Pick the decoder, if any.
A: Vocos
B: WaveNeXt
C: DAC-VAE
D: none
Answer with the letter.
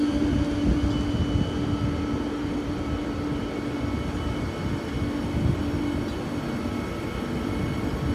D